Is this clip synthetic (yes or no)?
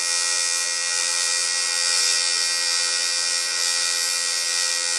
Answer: yes